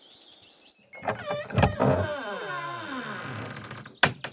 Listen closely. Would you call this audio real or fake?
real